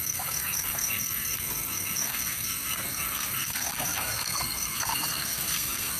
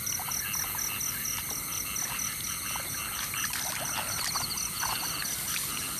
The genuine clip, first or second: second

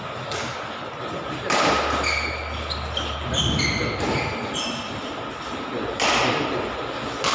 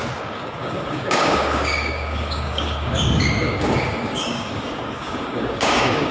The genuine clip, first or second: first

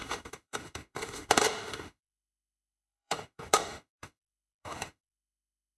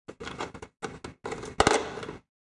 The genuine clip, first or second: second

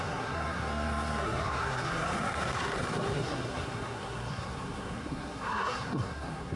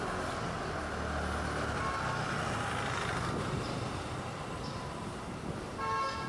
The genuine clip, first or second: second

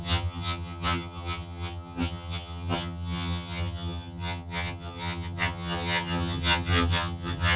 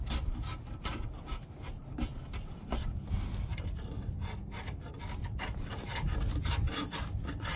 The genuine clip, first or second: second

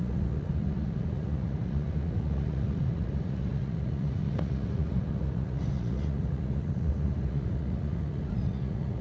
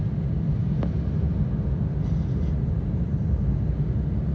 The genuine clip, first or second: second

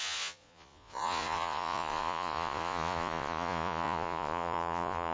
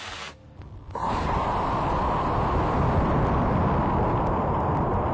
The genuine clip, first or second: second